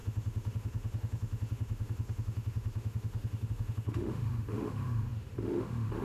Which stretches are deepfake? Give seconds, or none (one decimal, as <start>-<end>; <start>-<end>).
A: 0.0-6.0